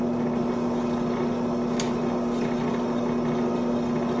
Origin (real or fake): real